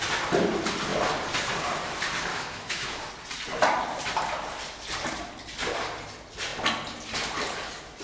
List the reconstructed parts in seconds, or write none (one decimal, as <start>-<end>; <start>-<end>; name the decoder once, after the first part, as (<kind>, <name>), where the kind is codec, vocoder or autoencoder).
2.3-3.1 (autoencoder, DAC-VAE)

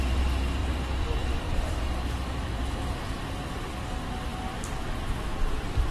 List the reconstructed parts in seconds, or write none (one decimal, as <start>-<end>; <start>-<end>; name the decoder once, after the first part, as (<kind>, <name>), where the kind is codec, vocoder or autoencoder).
0.6-2.6 (vocoder, BigVGAN v2); 4.3-5.0

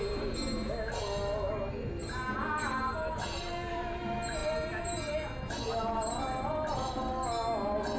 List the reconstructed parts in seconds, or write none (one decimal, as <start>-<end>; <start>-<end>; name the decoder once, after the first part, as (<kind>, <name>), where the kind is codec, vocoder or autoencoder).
none

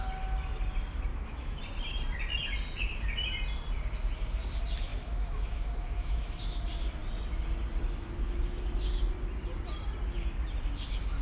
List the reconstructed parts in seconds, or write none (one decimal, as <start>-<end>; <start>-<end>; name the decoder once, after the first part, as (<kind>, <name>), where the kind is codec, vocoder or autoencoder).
1.1-1.6 (autoencoder, DAC-VAE); 4.9-6.4

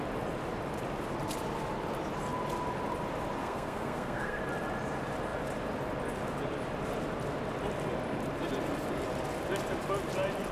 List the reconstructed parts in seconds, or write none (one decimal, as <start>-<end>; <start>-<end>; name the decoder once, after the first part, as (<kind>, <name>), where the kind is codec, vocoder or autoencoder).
3.4-4.4 (codec, SNAC)

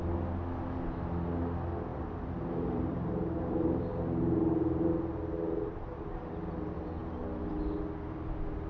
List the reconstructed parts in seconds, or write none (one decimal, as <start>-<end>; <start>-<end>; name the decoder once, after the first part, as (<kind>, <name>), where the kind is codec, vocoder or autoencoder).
1.9-6.3 (vocoder, BigVGAN v2)

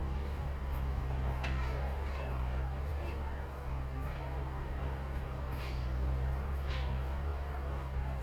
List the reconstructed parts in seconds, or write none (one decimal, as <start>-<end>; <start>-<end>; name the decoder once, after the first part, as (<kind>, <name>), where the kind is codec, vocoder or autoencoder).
0.0-8.2 (codec, DAC)